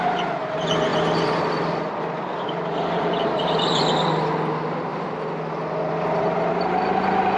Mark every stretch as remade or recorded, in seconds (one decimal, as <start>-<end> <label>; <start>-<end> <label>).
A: 0.0-0.9 recorded; 0.9-3.9 remade; 3.9-7.4 recorded